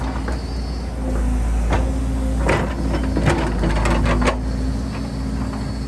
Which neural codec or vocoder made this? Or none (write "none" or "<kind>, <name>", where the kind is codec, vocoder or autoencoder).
none